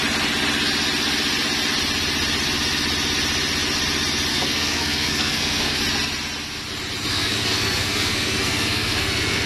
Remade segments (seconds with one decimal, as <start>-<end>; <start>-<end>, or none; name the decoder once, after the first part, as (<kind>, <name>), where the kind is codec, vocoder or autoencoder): 4.3-5.8 (codec, SNAC); 7.1-9.5